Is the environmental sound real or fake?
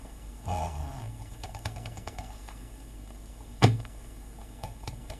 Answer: fake